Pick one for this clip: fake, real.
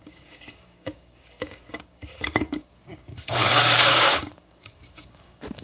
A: fake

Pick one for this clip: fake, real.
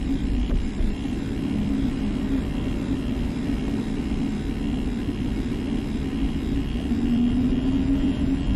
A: fake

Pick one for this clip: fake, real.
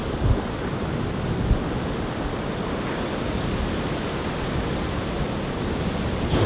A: real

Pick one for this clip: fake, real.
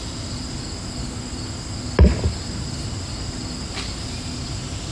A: real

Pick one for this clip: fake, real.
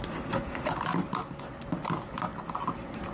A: real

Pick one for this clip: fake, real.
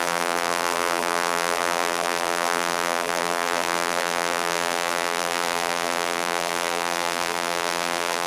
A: fake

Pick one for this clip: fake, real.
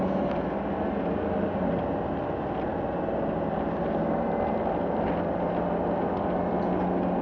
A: real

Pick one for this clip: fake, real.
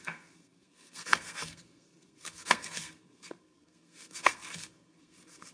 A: fake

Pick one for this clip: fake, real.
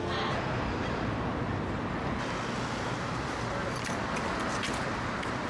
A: real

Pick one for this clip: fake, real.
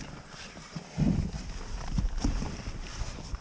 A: real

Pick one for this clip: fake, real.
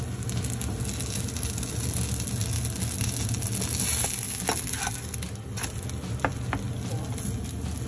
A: real